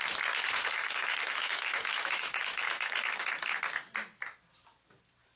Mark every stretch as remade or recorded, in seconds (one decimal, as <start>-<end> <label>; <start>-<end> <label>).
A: 0.0-0.4 recorded; 0.4-3.6 remade; 3.6-5.4 recorded